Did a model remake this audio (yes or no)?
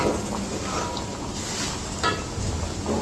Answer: no